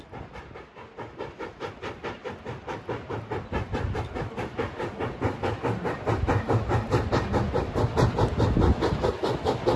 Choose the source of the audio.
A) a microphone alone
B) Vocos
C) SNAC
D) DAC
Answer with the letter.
A